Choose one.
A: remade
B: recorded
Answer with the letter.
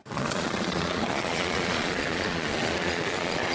A